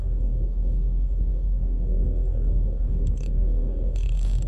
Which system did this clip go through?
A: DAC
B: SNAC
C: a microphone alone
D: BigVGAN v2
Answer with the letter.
A